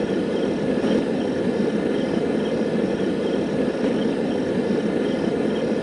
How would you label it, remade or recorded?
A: recorded